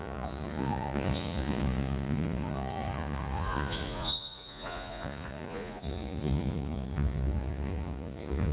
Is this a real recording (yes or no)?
no